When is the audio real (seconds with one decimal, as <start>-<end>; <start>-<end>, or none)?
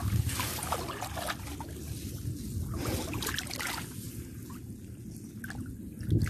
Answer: 0.0-6.3